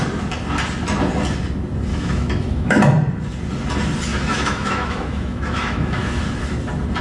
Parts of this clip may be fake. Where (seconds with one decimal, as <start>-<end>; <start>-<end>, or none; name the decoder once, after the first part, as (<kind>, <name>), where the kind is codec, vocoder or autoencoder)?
1.9-2.8 (autoencoder, DAC-VAE); 4.1-6.2